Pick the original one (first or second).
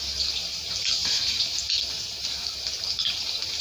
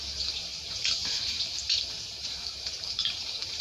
first